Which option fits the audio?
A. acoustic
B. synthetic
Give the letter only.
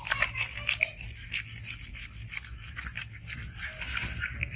A